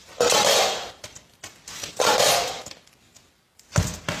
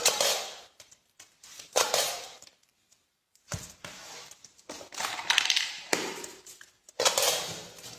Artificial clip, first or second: second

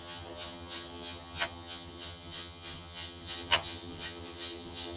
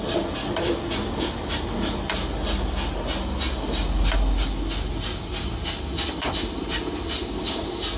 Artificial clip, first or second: first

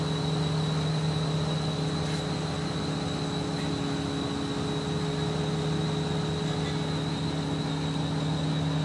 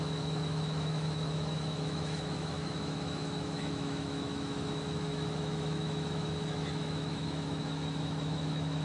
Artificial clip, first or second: second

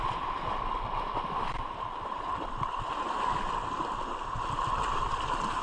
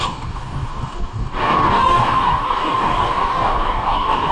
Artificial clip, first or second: second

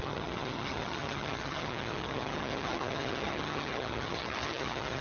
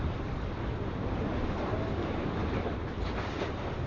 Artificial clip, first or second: first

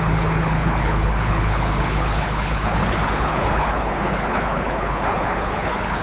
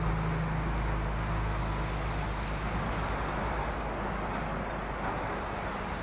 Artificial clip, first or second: first